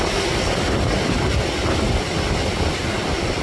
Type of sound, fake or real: real